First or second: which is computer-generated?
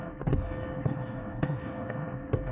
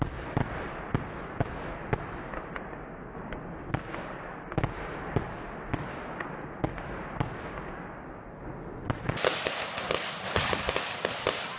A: first